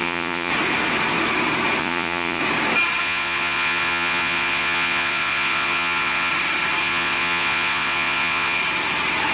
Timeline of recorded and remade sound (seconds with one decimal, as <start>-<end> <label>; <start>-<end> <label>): 0.0-0.5 remade; 0.5-1.8 recorded; 1.8-2.4 remade; 2.4-3.0 recorded; 3.0-6.3 remade; 6.3-6.8 recorded; 6.8-8.6 remade; 8.6-9.3 recorded